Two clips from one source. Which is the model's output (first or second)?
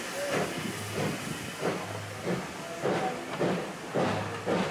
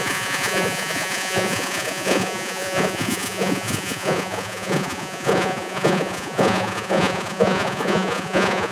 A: second